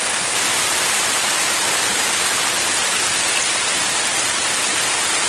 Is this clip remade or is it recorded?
recorded